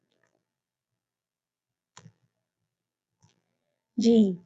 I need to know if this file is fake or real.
fake